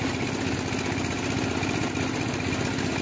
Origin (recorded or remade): recorded